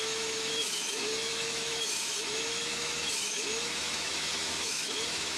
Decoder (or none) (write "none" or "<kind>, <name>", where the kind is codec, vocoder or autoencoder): autoencoder, DAC-VAE